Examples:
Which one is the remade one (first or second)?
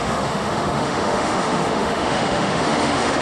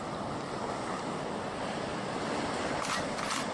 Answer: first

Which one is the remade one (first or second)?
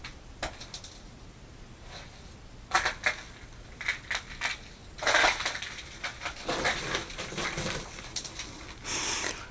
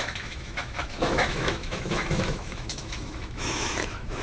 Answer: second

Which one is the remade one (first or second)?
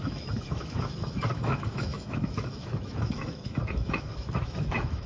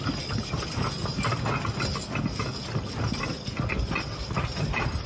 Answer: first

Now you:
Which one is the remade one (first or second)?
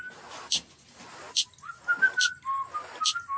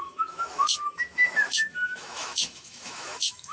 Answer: second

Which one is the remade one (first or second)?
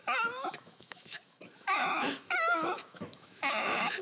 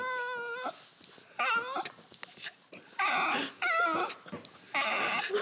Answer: first